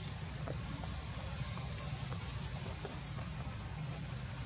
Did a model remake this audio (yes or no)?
no